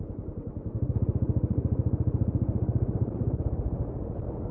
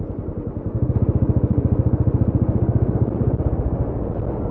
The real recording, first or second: second